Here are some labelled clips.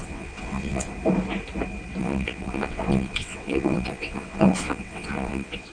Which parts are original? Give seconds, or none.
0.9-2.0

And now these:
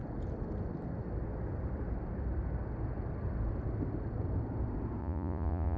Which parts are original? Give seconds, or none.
0.0-5.0

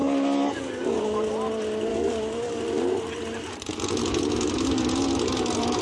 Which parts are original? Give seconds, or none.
1.3-1.9; 2.6-5.8

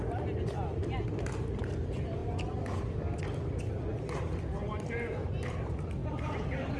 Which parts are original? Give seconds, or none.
0.0-6.8

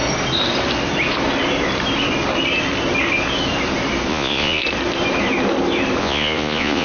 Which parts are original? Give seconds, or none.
0.0-4.1; 4.6-6.0